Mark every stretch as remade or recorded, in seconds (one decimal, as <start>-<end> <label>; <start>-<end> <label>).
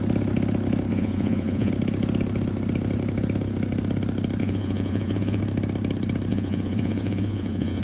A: 0.0-0.9 recorded; 0.9-1.7 remade; 1.7-4.4 recorded; 4.4-5.4 remade; 5.4-6.3 recorded; 6.3-7.8 remade